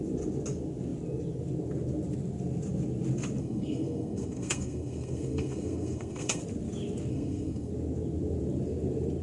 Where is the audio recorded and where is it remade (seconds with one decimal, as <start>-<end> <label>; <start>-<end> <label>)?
0.0-3.4 recorded; 3.4-6.4 remade; 6.4-7.1 recorded; 7.1-7.7 remade; 7.7-9.2 recorded